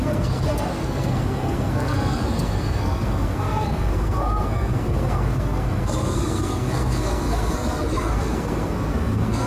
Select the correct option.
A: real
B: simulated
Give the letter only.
B